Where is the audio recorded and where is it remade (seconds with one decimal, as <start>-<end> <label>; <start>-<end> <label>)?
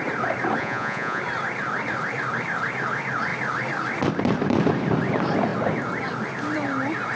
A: 0.0-0.6 recorded; 0.6-1.2 remade; 1.2-7.2 recorded